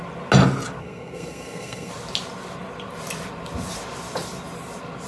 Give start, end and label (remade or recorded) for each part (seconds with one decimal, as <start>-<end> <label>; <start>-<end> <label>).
0.0-0.8 recorded; 0.8-1.9 remade; 1.9-5.1 recorded